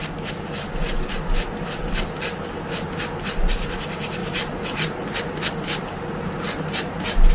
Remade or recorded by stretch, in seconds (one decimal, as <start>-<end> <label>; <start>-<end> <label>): 0.0-7.3 recorded